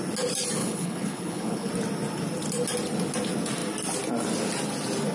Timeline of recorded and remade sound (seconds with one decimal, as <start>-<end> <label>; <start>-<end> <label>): 0.0-0.6 recorded; 0.6-1.7 remade; 1.7-5.1 recorded